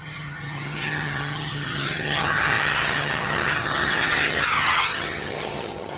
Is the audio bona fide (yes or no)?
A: no